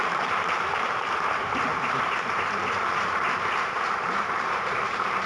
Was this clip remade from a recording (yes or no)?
yes